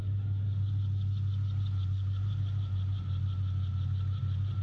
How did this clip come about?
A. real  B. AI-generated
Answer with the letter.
A